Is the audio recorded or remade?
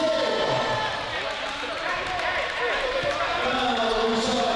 recorded